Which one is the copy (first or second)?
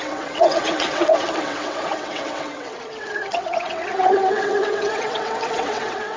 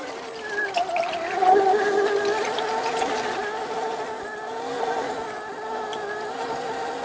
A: first